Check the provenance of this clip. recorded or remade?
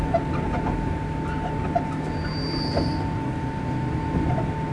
recorded